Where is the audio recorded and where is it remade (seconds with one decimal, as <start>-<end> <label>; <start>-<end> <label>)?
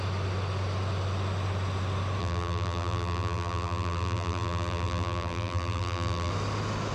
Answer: 0.0-2.2 recorded; 2.2-6.3 remade; 6.3-6.9 recorded